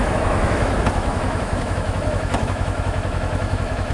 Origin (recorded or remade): remade